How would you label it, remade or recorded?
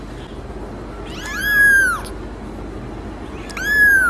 recorded